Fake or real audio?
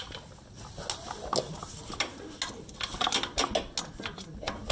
real